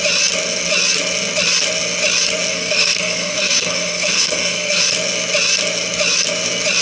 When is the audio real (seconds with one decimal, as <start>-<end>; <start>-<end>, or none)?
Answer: 0.0-2.5; 4.8-6.8